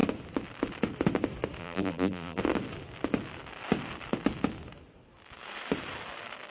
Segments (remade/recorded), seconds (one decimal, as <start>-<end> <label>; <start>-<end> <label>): 0.0-1.6 recorded; 1.6-2.4 remade; 2.4-6.5 recorded